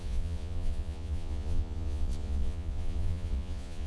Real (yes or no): no